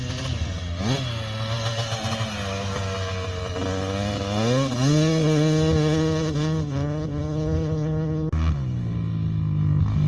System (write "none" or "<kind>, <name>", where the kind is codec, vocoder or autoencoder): none